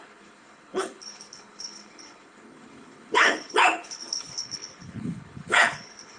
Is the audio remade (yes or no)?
yes